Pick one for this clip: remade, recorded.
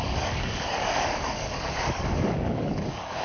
remade